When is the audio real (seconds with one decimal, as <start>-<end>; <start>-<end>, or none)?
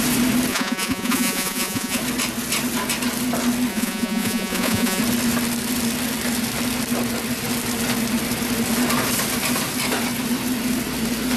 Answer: 0.0-0.5; 2.0-3.7; 5.0-11.4